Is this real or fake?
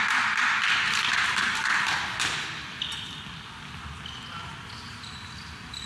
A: real